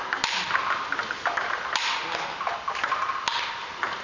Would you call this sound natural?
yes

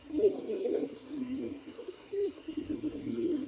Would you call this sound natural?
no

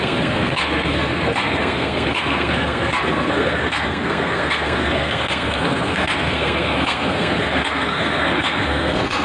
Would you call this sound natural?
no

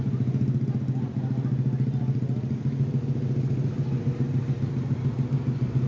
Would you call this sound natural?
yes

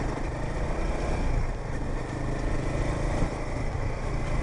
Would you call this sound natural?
yes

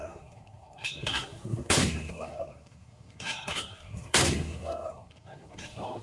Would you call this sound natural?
no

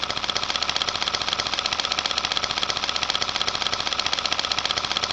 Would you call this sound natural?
yes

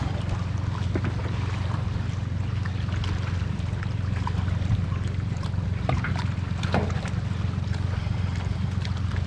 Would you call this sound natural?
yes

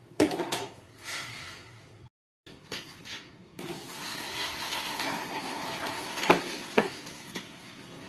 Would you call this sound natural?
no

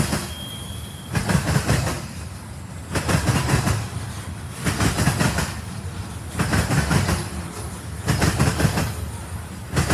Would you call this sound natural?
yes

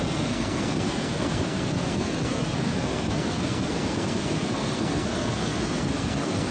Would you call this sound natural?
no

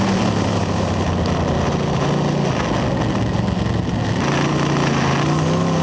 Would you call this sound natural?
yes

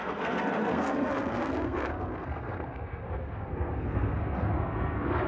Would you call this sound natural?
no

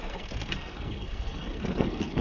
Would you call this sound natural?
no